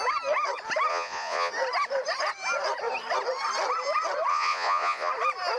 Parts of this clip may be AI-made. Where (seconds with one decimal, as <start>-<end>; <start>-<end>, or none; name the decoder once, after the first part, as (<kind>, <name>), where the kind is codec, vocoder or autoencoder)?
0.9-1.5 (vocoder, Vocos); 4.3-5.1